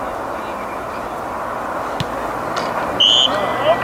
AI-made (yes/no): no